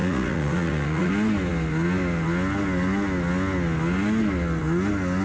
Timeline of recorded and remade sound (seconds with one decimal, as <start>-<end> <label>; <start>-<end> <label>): 0.0-1.1 remade; 1.1-5.2 recorded